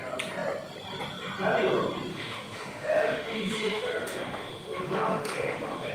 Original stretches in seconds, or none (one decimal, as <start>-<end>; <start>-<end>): 0.0-2.1